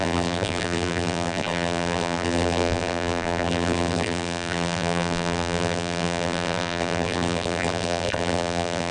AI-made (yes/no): yes